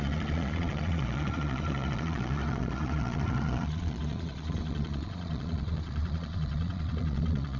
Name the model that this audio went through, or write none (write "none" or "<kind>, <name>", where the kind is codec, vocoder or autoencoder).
vocoder, Vocos